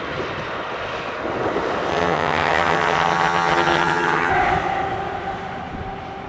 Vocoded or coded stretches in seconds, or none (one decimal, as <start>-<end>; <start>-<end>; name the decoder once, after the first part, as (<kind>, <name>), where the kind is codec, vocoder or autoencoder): 1.9-4.3 (vocoder, HiFi-GAN)

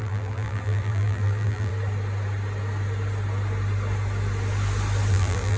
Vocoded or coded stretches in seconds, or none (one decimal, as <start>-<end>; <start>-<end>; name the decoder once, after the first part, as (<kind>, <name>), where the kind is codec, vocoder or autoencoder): 0.0-1.7 (vocoder, BigVGAN v2); 5.1-5.6

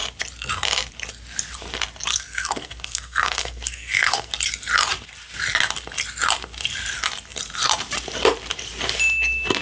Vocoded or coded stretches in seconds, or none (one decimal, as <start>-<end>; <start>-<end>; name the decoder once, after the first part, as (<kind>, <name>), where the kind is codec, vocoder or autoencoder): 2.1-4.3 (codec, SNAC)

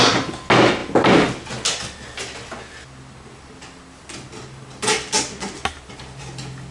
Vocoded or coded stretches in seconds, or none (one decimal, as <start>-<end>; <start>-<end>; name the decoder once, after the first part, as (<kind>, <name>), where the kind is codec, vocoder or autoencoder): none

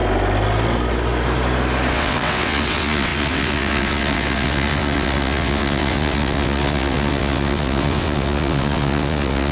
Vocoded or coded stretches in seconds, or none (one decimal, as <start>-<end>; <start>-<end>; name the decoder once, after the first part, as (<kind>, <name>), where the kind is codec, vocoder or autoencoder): 1.9-9.5 (vocoder, WaveNeXt)

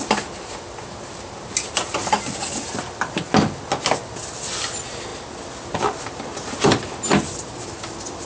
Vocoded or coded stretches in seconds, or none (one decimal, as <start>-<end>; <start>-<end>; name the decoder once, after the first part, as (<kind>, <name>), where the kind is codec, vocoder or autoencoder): none

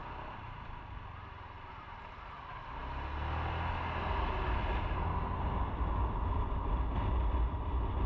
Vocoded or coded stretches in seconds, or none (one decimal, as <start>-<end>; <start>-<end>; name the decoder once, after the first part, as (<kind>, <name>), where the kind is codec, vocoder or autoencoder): 0.0-1.7 (vocoder, BigVGAN v2)